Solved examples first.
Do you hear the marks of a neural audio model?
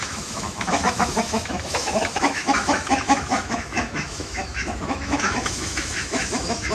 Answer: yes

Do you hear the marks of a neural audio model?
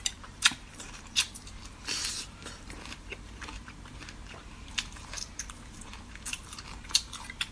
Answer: yes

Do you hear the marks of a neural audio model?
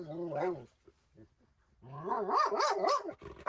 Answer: no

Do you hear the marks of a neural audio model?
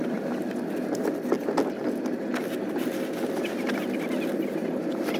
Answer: no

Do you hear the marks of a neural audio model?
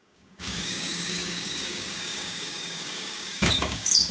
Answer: yes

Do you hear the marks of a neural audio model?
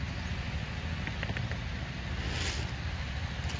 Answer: no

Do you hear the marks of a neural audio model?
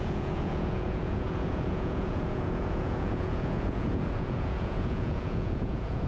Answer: yes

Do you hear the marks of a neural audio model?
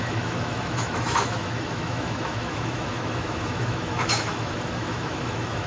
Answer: yes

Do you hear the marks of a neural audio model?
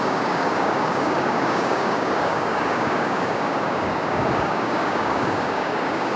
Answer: yes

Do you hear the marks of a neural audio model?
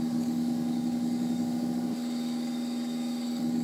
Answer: yes